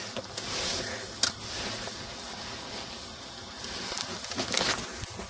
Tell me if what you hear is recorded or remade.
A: recorded